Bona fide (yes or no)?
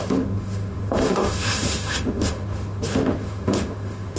no